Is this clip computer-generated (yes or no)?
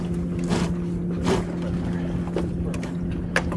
no